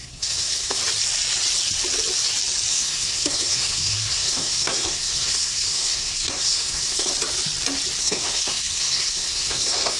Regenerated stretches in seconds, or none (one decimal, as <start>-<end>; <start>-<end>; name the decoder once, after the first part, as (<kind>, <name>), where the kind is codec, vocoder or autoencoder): 0.0-0.8 (codec, SNAC); 2.7-7.1; 8.0-10.0